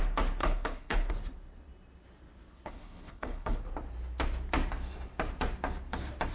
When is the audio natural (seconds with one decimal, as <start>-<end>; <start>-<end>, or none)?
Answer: 0.0-0.4; 1.1-2.5; 3.6-6.3